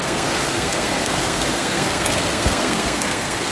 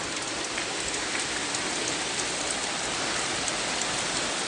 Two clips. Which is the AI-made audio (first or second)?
first